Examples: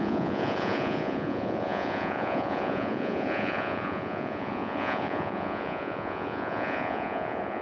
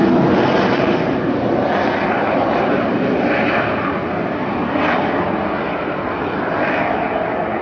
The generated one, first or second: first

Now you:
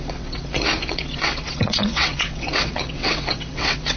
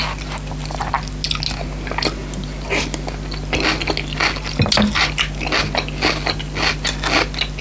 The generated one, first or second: first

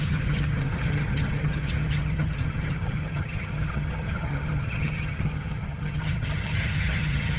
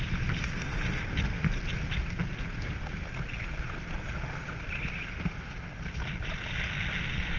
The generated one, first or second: first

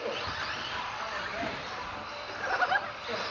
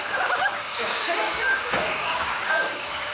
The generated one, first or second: second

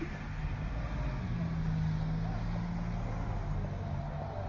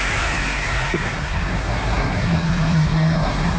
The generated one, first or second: second